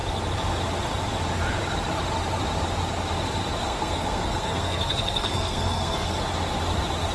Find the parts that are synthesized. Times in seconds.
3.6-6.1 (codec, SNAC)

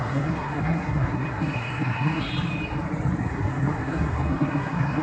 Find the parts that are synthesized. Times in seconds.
0.0-2.3 (codec, SNAC); 3.2-5.0